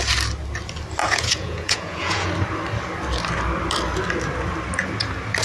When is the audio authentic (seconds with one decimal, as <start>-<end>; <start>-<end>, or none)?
0.0-1.0; 2.3-5.4